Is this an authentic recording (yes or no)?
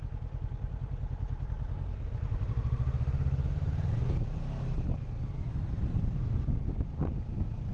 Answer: yes